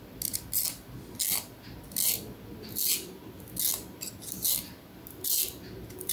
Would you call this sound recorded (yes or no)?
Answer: yes